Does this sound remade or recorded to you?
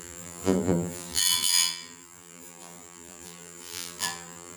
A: remade